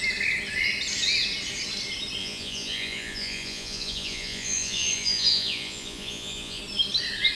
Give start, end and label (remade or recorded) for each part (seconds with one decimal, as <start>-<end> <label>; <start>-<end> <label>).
0.0-2.2 recorded; 2.2-6.6 remade; 6.6-7.3 recorded